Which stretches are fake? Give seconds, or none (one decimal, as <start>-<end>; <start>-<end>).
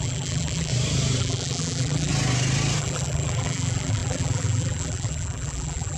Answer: 0.0-0.7; 1.2-2.1; 2.8-6.0